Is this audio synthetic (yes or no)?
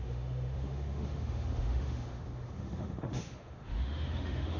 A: yes